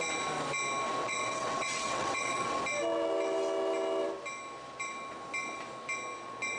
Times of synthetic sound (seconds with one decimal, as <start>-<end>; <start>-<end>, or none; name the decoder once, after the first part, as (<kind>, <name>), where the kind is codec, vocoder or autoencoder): 1.0-2.6 (vocoder, WaveNeXt)